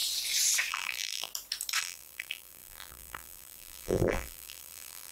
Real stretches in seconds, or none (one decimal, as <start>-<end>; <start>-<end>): 0.0-0.7; 1.3-1.8